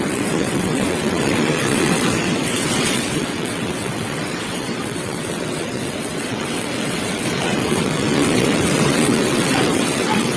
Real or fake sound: fake